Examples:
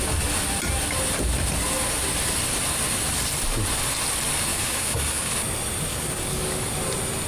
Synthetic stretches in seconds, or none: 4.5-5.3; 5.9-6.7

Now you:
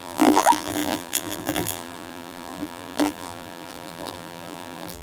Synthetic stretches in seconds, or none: 0.0-5.0

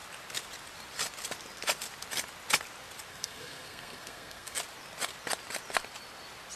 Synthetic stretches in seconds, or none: 3.1-4.6

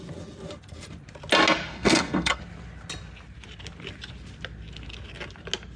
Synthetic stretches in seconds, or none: 1.7-2.4

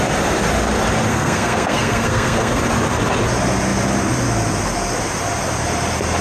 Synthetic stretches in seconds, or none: 1.1-2.6

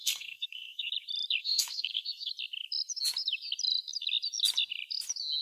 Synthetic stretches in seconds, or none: 0.0-0.9; 1.4-2.3

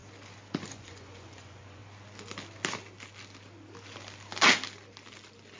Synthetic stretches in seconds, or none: 0.7-1.8

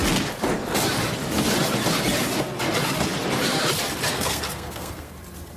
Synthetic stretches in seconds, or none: 4.1-5.1